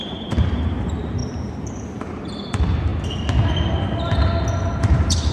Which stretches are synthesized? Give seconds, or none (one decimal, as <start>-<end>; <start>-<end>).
0.0-2.9; 4.8-5.3

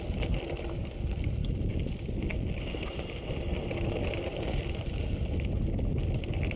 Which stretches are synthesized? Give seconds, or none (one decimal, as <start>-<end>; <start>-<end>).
0.0-6.6